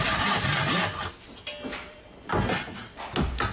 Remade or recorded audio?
recorded